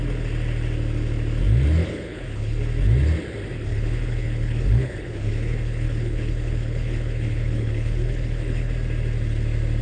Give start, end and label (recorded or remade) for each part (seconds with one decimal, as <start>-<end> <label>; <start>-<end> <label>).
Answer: 0.0-1.8 recorded; 1.8-2.6 remade; 2.6-3.7 recorded; 3.7-8.7 remade; 8.7-9.8 recorded